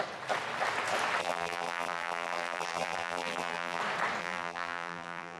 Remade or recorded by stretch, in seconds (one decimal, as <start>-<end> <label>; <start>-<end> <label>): 0.0-1.2 recorded; 1.2-3.8 remade; 3.8-4.2 recorded; 4.2-5.4 remade